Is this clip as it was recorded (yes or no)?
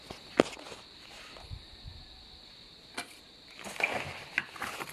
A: yes